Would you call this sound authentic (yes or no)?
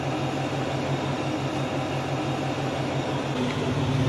yes